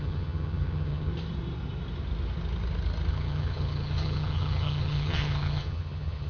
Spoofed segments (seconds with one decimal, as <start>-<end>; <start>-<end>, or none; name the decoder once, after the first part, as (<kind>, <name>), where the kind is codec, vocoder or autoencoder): 0.0-1.1 (vocoder, HiFi-GAN); 3.1-6.3